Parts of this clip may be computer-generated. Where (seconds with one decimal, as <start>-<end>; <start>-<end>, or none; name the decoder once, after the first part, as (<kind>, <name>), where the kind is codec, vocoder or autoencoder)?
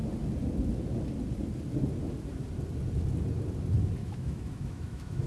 4.0-5.3 (autoencoder, DAC-VAE)